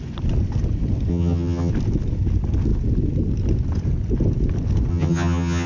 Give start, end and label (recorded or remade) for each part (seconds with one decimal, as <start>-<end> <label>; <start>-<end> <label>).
0.0-1.1 recorded; 1.1-1.7 remade; 1.7-4.9 recorded; 4.9-5.7 remade